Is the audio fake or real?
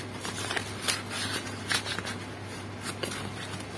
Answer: real